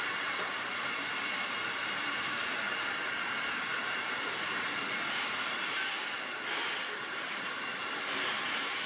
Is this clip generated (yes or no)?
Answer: no